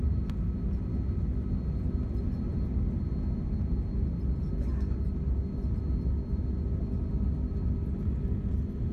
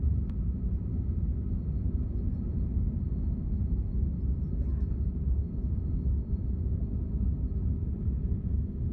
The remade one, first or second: second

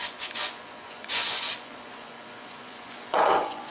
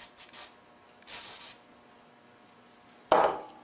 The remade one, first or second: first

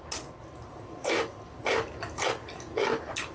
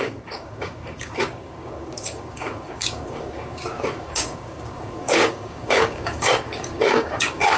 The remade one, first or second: second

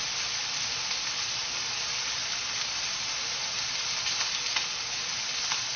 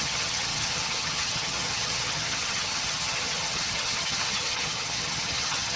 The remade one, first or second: second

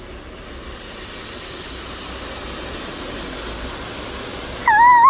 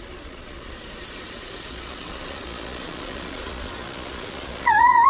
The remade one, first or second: second